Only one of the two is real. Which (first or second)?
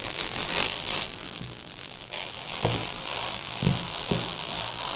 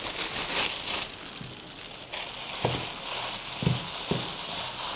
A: second